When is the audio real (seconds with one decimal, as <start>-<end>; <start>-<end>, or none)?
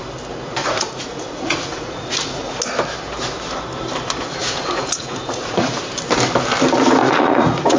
0.0-0.6; 2.6-4.4; 5.8-7.0